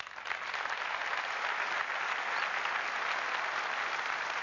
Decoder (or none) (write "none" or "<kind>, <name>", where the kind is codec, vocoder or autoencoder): none